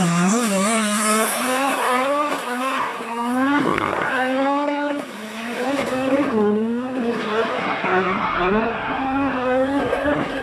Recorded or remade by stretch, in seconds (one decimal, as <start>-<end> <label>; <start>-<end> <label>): 0.0-10.4 remade